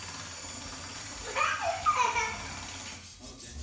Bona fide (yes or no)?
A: yes